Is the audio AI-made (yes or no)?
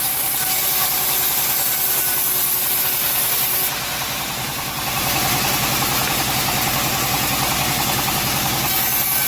no